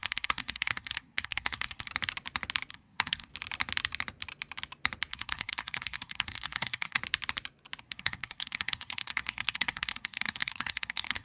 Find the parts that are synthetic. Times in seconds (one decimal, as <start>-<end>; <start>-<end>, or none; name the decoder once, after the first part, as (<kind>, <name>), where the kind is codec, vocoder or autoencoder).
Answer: 0.0-1.9 (codec, SNAC); 2.7-3.3; 5.1-7.0; 7.8-11.2